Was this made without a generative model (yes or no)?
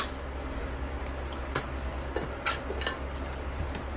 yes